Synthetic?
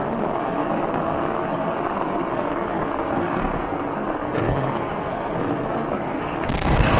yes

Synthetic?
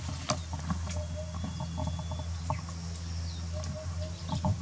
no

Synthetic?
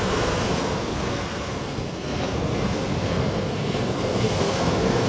yes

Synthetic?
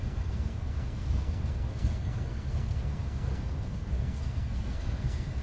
yes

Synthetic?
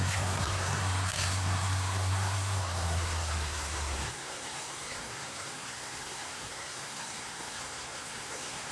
yes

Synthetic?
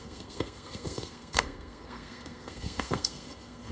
yes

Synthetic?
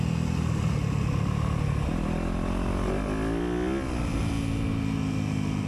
no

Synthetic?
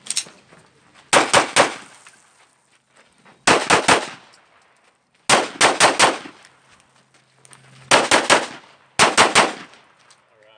no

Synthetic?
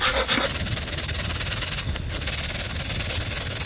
no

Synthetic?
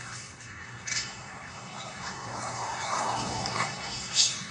yes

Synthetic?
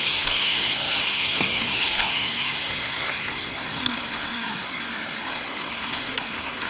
yes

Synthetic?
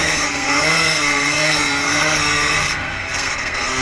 yes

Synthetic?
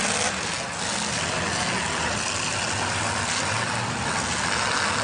no